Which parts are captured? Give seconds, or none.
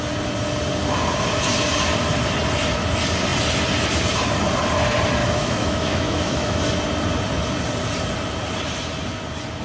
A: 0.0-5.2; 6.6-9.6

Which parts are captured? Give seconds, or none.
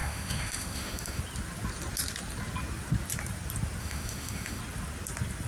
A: 1.2-3.8; 4.6-5.5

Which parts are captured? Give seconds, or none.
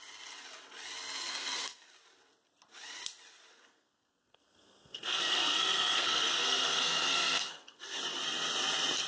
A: 0.0-1.3; 1.9-3.5; 7.8-9.1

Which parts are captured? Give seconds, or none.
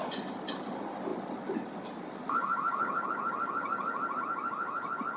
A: 0.0-5.2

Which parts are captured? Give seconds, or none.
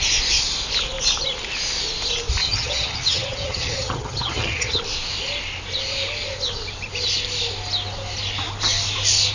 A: 0.0-2.4; 4.8-9.3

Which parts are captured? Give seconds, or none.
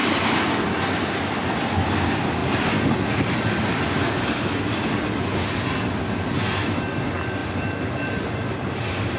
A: 1.4-7.4; 8.7-9.2